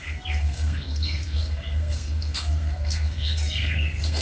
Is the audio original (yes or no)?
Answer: no